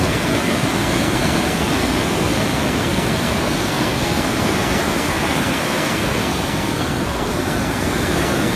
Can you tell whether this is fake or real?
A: fake